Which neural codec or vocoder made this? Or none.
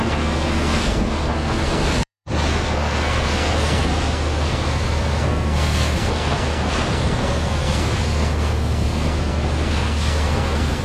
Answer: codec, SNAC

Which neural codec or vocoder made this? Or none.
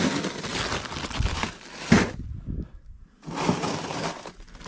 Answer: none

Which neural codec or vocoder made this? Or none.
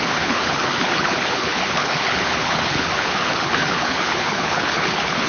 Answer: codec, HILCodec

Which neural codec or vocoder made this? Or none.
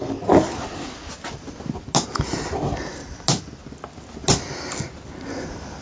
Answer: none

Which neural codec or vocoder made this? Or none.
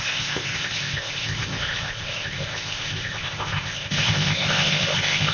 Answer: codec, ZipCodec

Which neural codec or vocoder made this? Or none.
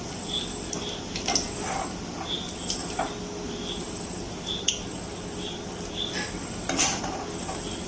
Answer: none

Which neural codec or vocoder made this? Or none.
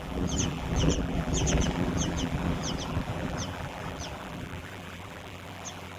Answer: vocoder, BigVGAN v2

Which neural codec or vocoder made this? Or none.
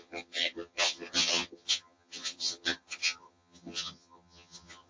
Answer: vocoder, HiFi-GAN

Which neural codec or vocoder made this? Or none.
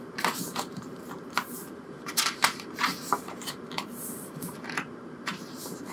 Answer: vocoder, BigVGAN v2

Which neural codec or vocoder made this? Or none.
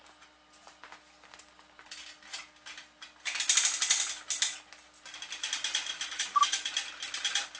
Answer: none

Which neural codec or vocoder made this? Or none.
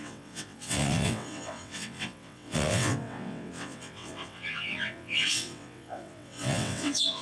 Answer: vocoder, WaveNeXt